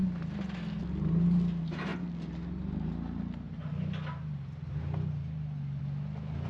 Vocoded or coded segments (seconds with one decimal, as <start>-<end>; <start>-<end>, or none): none